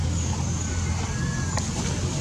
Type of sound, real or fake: real